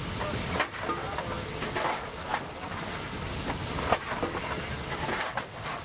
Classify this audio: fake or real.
real